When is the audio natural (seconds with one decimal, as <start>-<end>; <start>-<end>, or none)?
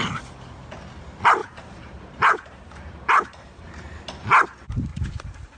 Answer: 0.0-1.4; 4.0-4.9